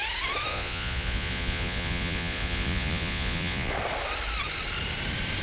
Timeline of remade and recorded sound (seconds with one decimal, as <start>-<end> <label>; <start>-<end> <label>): 0.0-0.5 recorded; 0.5-3.7 remade; 3.7-5.4 recorded